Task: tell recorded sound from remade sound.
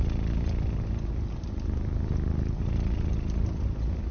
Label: recorded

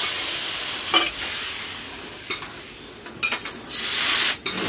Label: recorded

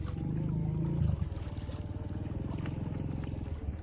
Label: recorded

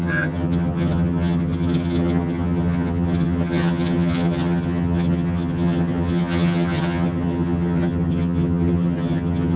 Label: remade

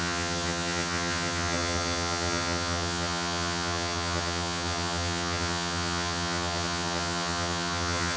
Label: remade